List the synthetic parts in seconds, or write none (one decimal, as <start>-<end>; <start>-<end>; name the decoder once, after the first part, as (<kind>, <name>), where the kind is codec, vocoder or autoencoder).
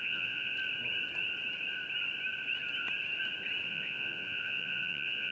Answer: 0.0-0.5 (vocoder, Vocos); 3.7-5.3